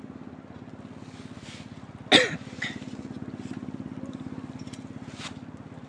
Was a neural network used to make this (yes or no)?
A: no